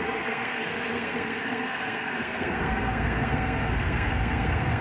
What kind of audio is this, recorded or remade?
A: remade